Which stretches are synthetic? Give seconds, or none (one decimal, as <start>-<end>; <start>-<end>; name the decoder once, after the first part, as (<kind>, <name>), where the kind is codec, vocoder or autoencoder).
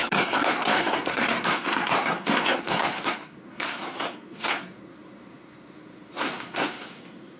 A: 0.0-7.4 (codec, SNAC)